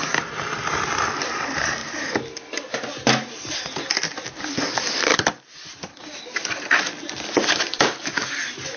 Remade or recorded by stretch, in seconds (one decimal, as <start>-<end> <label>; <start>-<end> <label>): 0.0-5.1 recorded; 5.1-6.0 remade; 6.0-8.8 recorded